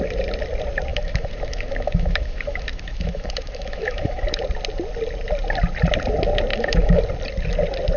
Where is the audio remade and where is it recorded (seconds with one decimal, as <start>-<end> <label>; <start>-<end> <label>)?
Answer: 0.0-0.9 recorded; 0.9-4.4 remade; 4.4-6.5 recorded; 6.5-7.0 remade; 7.0-8.0 recorded